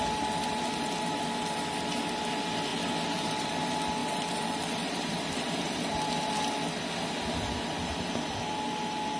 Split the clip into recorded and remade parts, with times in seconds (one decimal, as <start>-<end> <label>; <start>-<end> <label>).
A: 0.0-2.7 recorded; 2.7-3.5 remade; 3.5-4.0 recorded; 4.0-6.3 remade; 6.3-9.2 recorded